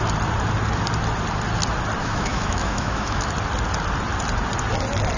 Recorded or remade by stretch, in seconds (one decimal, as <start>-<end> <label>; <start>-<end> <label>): 0.0-2.0 recorded; 2.0-3.3 remade; 3.3-5.2 recorded